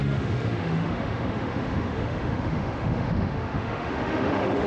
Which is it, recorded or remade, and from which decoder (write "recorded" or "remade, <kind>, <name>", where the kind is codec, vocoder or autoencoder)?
remade, autoencoder, DAC-VAE